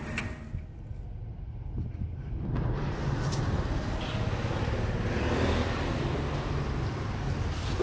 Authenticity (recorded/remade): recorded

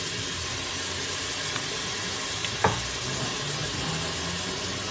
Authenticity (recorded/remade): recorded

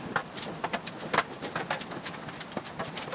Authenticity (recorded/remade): recorded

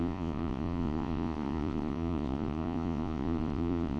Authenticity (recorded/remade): remade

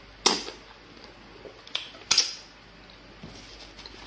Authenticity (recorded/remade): recorded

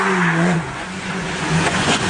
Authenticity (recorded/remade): remade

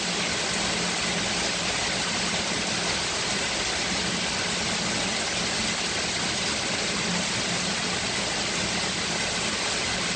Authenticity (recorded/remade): recorded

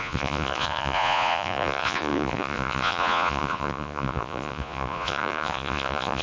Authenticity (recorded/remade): remade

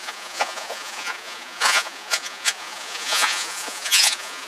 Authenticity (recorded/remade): remade